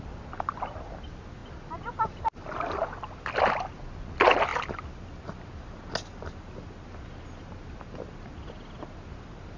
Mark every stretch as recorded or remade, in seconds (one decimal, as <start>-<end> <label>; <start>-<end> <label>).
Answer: 0.0-9.6 recorded